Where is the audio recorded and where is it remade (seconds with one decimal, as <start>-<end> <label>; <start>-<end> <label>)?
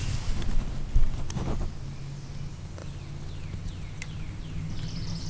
0.0-5.3 recorded